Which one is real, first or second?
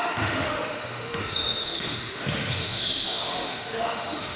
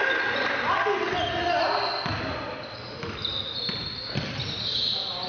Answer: second